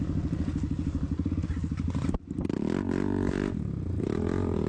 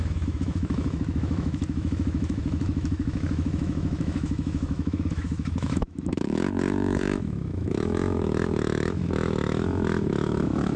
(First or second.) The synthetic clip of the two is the second